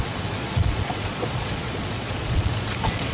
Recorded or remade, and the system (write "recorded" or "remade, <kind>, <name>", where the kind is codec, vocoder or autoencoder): remade, vocoder, Vocos